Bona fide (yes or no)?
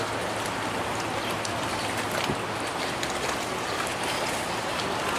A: yes